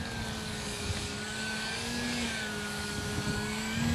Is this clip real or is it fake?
fake